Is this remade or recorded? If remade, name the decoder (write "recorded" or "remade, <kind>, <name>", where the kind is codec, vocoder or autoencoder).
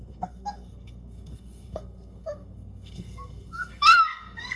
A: remade, codec, SNAC